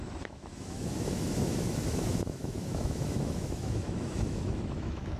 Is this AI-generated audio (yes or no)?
yes